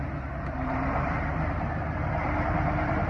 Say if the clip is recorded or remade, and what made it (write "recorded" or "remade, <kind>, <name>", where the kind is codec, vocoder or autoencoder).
remade, vocoder, BigVGAN v2